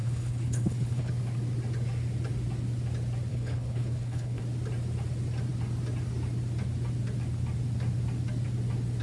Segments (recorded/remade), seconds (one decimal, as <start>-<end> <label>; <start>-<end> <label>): 0.0-1.1 remade; 1.1-3.3 recorded; 3.3-4.4 remade; 4.4-9.0 recorded